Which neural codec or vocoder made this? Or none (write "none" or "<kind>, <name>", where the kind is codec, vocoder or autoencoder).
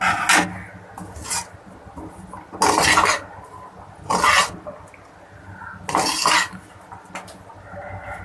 none